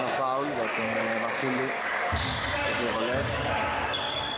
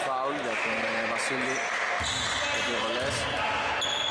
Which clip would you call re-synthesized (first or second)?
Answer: first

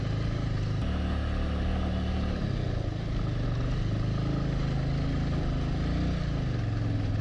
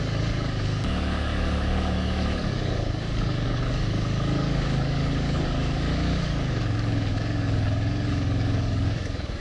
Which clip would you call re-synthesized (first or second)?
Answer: second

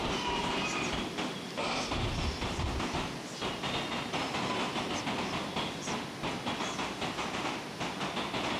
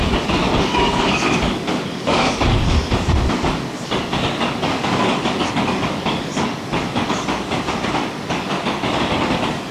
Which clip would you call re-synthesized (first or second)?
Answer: second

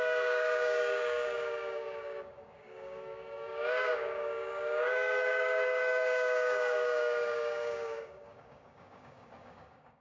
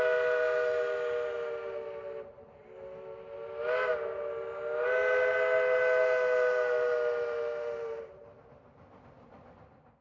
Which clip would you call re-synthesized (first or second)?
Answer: first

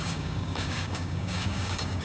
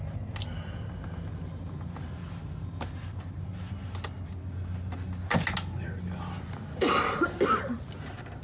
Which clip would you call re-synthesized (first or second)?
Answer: first